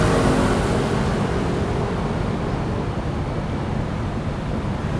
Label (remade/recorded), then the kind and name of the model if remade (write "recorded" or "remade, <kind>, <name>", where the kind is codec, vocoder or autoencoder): recorded